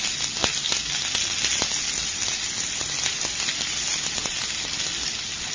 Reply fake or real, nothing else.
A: real